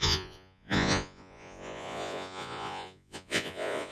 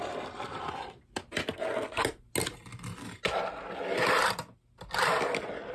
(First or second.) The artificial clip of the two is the first